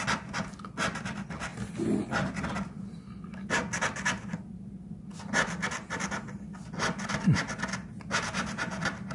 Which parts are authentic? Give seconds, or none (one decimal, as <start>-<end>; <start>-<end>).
0.0-9.1